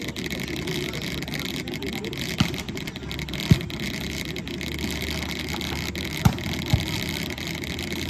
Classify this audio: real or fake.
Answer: real